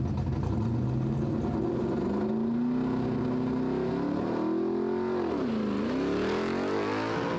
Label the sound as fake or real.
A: real